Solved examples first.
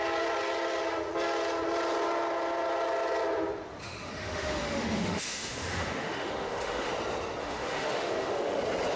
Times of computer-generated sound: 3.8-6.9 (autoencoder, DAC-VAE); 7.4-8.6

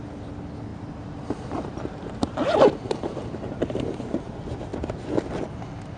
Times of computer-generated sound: 0.7-4.3 (vocoder, BigVGAN v2)